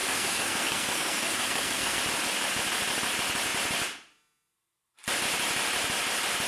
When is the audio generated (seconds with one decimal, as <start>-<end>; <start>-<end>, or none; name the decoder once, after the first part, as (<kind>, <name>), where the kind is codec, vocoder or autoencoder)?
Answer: 0.0-2.0 (codec, SNAC)